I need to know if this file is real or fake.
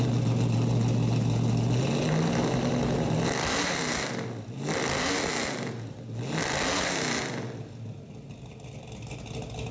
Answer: real